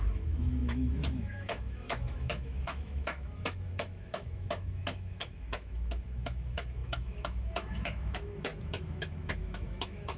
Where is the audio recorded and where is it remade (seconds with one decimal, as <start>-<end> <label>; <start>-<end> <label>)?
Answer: 0.0-10.2 remade